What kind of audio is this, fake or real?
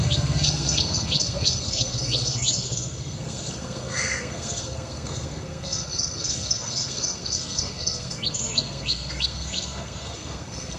fake